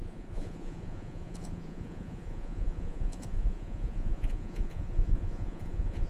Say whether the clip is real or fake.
fake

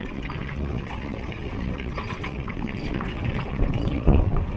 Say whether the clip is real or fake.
fake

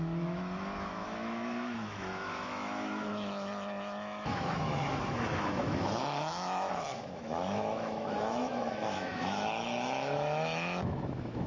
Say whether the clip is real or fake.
fake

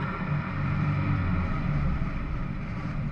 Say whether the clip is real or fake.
fake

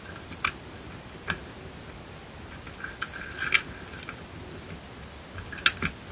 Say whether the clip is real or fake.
real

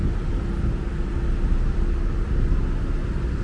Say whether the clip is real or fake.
real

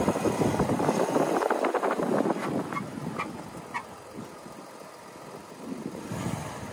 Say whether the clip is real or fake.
real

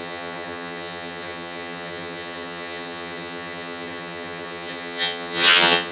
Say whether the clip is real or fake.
fake